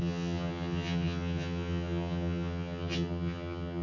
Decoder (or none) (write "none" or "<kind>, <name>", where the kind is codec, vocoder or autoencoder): vocoder, HiFi-GAN